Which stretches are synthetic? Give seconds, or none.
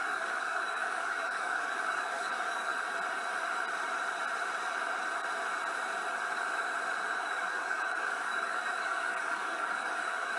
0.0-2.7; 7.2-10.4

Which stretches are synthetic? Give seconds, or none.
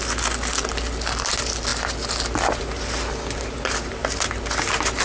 none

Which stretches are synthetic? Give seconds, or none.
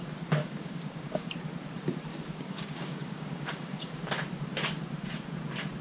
0.4-1.3; 2.1-4.1